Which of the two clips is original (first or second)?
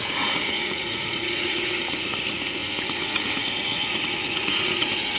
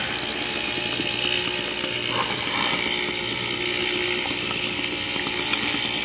second